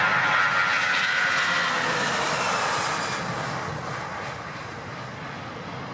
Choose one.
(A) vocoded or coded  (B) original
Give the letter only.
B